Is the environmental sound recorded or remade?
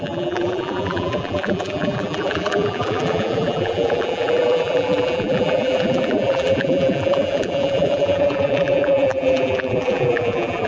remade